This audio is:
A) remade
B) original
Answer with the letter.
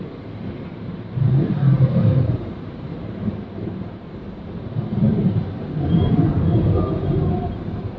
A